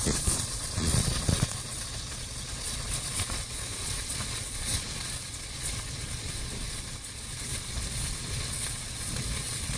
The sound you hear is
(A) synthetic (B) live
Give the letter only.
A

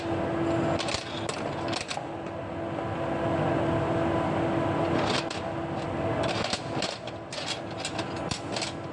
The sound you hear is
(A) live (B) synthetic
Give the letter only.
A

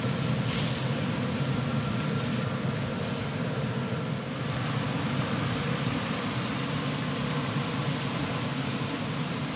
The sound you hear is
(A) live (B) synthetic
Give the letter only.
A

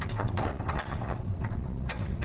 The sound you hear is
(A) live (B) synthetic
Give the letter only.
B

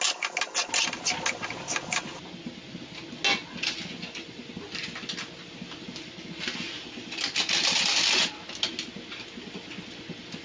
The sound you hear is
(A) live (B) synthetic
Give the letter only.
A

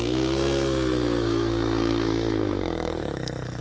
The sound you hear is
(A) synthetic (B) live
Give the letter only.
A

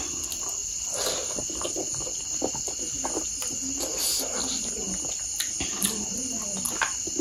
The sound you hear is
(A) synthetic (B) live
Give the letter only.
B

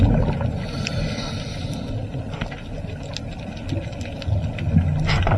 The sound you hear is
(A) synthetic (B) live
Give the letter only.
B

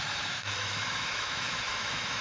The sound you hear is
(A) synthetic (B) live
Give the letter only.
A